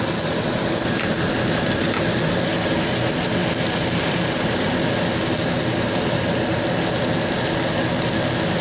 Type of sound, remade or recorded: recorded